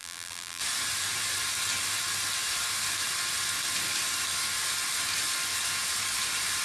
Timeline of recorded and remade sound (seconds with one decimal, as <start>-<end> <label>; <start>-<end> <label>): 0.0-0.6 remade; 0.6-6.6 recorded